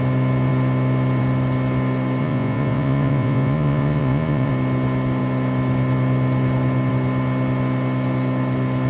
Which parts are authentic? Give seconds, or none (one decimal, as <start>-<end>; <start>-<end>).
0.0-2.2; 4.5-8.9